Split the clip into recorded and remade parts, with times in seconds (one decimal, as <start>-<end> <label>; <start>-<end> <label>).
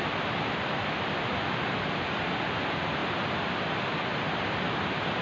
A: 0.0-5.2 recorded